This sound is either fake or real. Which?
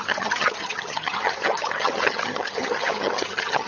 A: fake